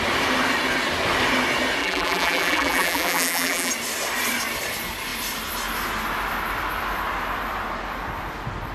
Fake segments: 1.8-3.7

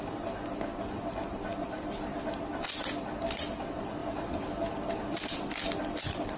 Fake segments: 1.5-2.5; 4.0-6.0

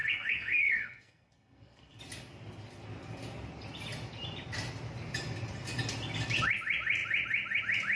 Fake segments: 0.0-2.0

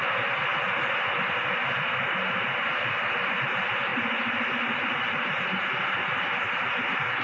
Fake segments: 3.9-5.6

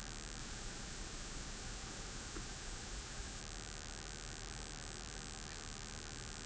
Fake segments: 0.4-3.4

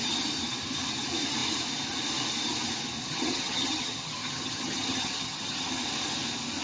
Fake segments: 3.0-5.8